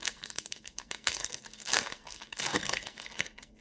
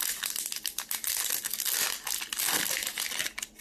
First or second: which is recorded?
second